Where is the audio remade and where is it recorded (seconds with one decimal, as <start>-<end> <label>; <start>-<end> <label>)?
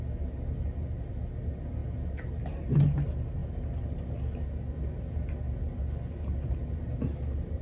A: 0.0-7.6 recorded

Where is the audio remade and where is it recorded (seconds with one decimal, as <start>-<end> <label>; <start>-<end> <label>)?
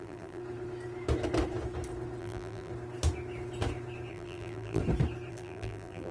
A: 0.0-0.4 remade; 0.4-2.2 recorded; 2.2-2.7 remade; 2.7-4.1 recorded; 4.1-4.8 remade; 4.8-5.3 recorded; 5.3-6.1 remade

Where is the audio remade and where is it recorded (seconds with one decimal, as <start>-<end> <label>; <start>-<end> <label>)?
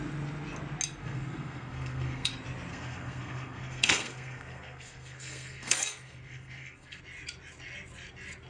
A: 0.0-1.0 recorded; 1.0-2.3 remade; 2.3-2.7 recorded; 2.7-7.0 remade; 7.0-8.5 recorded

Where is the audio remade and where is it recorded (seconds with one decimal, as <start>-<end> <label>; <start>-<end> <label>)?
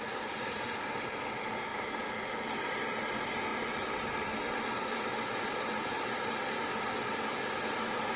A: 0.0-8.2 recorded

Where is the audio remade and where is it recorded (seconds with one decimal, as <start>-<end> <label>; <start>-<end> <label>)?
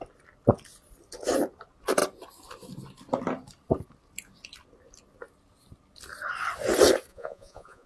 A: 0.0-7.1 recorded; 7.1-7.9 remade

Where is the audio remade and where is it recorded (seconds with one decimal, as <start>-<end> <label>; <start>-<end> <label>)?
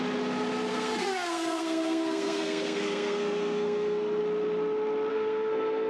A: 0.0-0.7 recorded; 0.7-4.2 remade; 4.2-5.1 recorded; 5.1-5.9 remade